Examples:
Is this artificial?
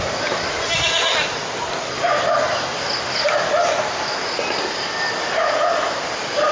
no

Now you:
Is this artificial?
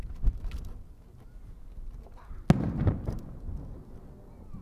no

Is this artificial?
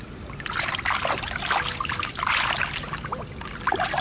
no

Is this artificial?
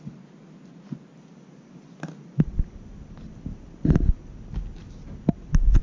no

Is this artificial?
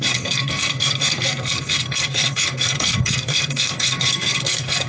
yes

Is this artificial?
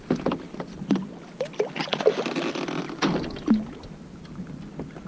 no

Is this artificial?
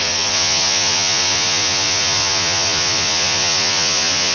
yes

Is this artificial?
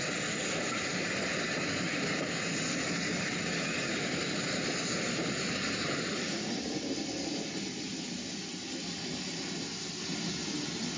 no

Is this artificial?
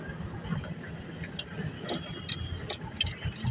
no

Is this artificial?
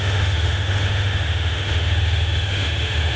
yes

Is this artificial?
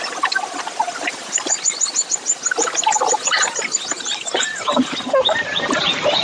no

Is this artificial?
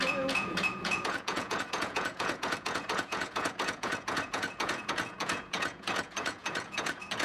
yes